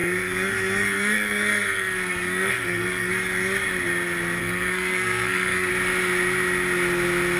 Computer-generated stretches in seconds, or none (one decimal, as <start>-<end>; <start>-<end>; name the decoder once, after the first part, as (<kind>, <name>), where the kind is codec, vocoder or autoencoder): 0.0-3.1 (codec, SNAC); 4.4-5.7